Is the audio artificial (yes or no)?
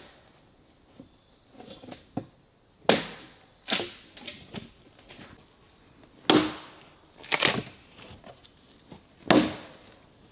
no